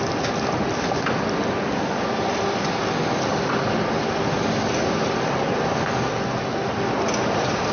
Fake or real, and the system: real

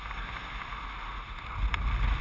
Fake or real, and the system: real